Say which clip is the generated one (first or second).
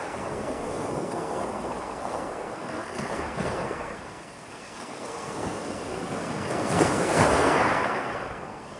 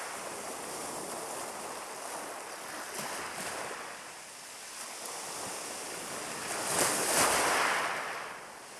first